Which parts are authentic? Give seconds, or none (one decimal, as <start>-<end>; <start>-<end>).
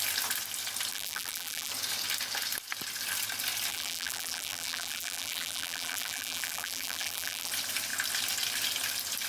0.0-0.9; 1.7-3.7; 7.5-9.3